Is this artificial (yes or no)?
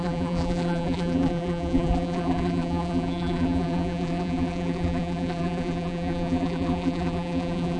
yes